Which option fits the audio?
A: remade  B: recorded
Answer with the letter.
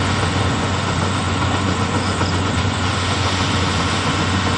A